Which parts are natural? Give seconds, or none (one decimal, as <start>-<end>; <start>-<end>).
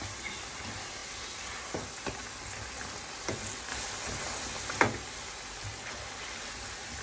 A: 0.0-7.0